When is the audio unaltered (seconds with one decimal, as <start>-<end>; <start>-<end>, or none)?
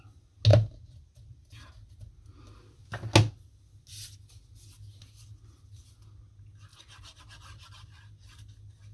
0.0-0.5; 1.7-6.7; 7.2-8.9